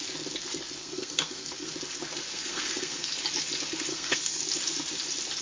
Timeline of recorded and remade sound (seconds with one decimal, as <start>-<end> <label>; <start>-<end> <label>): 0.0-0.8 recorded; 0.8-1.7 remade; 1.7-2.3 recorded; 2.3-3.2 remade; 3.2-3.9 recorded; 3.9-4.4 remade; 4.4-5.4 recorded